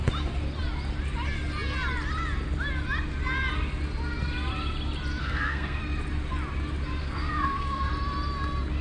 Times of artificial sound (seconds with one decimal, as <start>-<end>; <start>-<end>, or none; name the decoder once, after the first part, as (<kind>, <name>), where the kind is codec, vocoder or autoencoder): 5.2-5.8 (codec, SNAC); 7.0-7.9